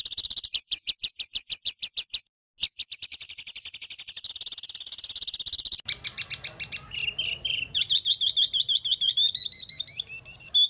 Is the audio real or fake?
real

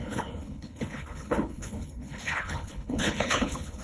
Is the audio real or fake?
fake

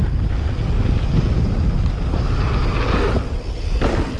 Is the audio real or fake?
real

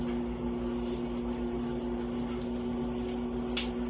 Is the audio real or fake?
real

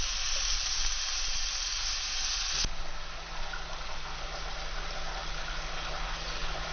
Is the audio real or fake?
real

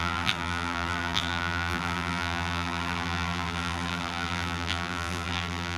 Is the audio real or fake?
fake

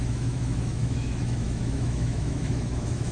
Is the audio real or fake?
fake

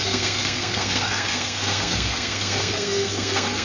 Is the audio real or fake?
fake